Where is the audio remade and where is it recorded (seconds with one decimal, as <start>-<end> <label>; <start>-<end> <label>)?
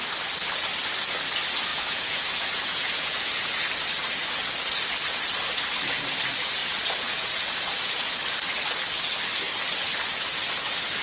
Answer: 0.0-1.7 recorded; 1.7-3.5 remade; 3.5-6.6 recorded; 6.6-8.1 remade; 8.1-11.0 recorded